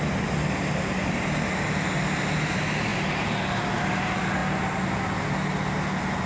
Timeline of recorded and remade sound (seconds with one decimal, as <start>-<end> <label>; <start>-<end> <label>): 0.0-6.3 recorded